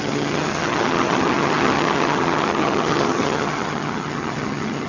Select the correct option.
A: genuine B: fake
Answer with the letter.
B